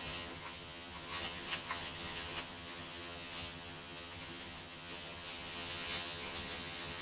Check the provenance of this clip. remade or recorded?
remade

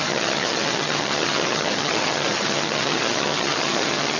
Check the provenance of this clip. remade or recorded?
remade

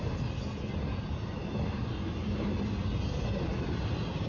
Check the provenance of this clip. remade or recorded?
recorded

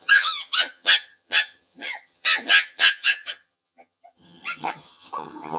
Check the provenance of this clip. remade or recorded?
remade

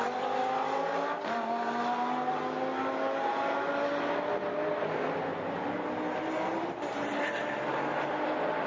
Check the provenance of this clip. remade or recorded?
recorded